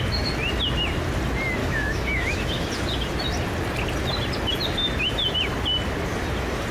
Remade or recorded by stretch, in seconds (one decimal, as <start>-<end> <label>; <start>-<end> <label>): 0.0-1.6 recorded; 1.6-2.7 remade; 2.7-6.7 recorded